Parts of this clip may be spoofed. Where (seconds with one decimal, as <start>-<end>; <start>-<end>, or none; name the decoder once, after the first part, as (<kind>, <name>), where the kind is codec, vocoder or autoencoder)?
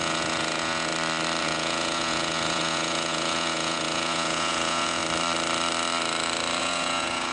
0.0-0.9 (vocoder, Vocos); 1.4-5.0; 6.6-7.3